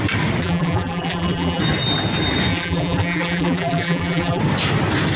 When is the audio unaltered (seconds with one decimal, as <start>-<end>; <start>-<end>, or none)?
0.0-0.4; 1.6-2.5; 4.4-5.2